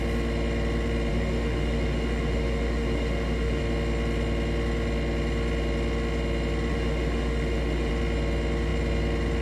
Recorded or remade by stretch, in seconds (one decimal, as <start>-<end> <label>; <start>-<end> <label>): 0.0-1.1 recorded; 1.1-3.6 remade; 3.6-6.7 recorded; 6.7-7.9 remade; 7.9-9.4 recorded

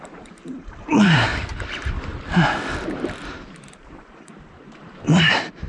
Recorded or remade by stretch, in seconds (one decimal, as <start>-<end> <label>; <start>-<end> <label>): 0.0-1.3 remade; 1.3-3.2 recorded; 3.2-5.7 remade

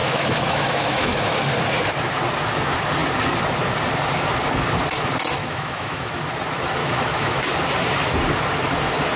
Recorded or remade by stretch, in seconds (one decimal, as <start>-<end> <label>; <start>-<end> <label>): 0.0-1.4 remade; 1.4-5.4 recorded; 5.4-6.1 remade; 6.1-6.8 recorded; 6.8-7.4 remade; 7.4-9.2 recorded

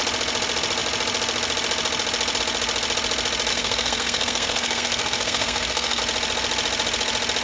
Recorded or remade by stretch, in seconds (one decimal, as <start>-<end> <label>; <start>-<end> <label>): 0.0-3.5 recorded; 3.5-6.0 remade; 6.0-7.4 recorded

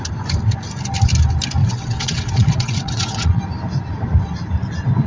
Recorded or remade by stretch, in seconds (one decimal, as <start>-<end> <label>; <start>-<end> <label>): 0.0-1.6 recorded; 1.6-3.4 remade; 3.4-5.1 recorded

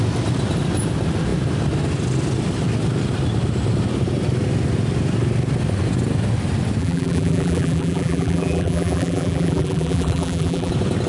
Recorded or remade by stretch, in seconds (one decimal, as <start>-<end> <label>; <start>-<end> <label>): 0.0-6.8 recorded; 6.8-10.7 remade; 10.7-11.1 recorded

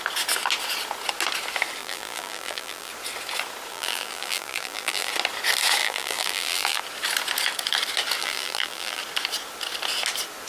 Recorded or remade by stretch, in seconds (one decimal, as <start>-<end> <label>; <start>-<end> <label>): 0.0-1.8 recorded; 1.8-2.9 remade; 2.9-3.7 recorded; 3.7-5.1 remade; 5.1-5.8 recorded; 5.8-6.8 remade; 6.8-8.2 recorded; 8.2-9.0 remade; 9.0-10.5 recorded

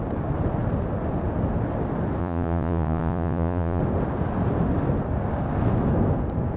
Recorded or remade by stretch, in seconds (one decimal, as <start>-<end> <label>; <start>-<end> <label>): 0.0-2.2 recorded; 2.2-3.8 remade; 3.8-6.6 recorded